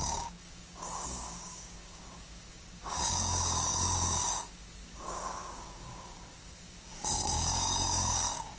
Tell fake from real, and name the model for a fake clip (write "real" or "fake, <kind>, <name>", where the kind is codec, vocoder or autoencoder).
fake, codec, DAC